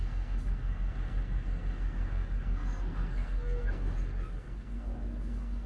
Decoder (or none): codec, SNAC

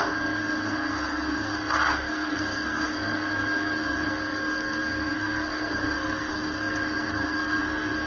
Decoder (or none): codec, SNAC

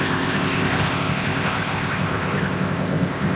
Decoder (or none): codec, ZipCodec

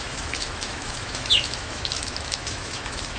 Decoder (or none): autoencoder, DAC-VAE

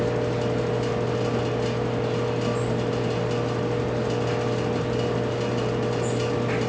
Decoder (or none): none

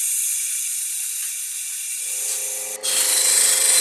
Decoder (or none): none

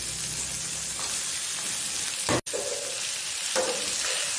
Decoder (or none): none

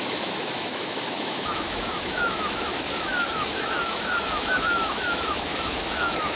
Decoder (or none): autoencoder, DAC-VAE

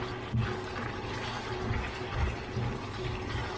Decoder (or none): none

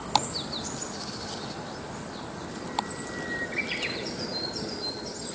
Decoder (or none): none